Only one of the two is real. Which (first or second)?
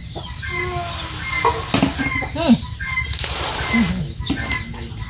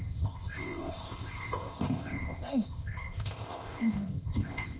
first